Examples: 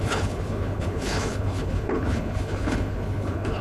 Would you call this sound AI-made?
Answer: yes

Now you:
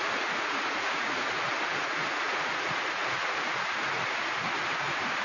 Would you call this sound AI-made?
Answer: yes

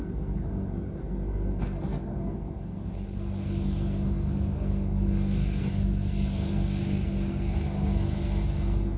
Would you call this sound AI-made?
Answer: yes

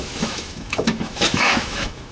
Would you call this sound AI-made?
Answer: yes